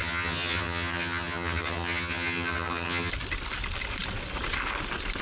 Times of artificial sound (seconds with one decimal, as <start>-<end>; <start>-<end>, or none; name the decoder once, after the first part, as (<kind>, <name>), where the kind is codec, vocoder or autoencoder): 0.0-3.1 (vocoder, HiFi-GAN)